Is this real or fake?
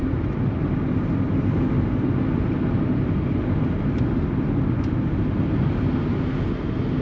real